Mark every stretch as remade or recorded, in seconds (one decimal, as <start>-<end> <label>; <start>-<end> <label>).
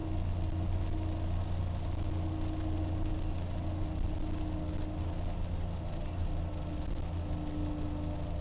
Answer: 0.0-8.4 recorded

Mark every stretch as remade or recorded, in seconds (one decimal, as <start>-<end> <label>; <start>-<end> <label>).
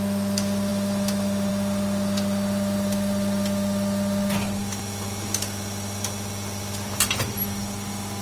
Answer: 0.0-8.2 recorded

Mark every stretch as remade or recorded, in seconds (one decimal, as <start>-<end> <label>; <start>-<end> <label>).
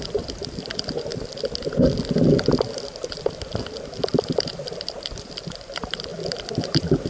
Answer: 0.0-1.1 remade; 1.1-4.8 recorded; 4.8-6.1 remade; 6.1-7.1 recorded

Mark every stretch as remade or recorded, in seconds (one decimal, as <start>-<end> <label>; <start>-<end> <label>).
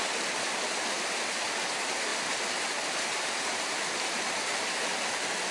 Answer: 0.0-5.5 recorded